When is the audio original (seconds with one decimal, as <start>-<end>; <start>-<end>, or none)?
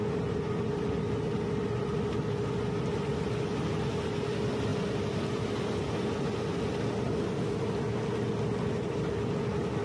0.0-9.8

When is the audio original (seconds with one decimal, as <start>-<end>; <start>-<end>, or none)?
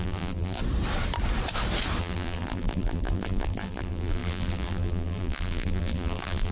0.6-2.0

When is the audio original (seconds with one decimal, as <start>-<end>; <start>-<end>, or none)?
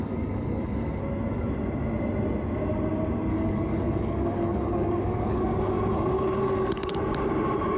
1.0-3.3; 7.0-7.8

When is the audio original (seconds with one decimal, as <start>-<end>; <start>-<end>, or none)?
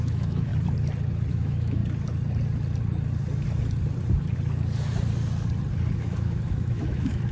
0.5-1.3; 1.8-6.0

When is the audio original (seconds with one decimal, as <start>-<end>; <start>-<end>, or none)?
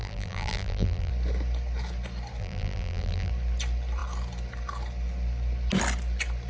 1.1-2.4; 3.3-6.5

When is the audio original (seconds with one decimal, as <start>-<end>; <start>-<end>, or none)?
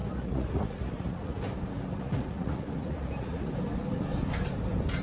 1.4-1.9; 3.5-5.0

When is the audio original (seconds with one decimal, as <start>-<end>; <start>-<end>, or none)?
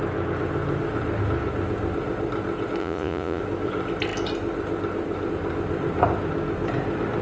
0.0-2.8; 3.4-7.2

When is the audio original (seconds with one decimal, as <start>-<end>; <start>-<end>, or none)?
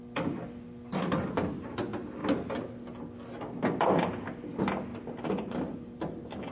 0.0-6.5